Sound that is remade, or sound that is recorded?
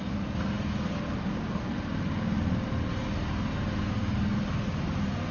recorded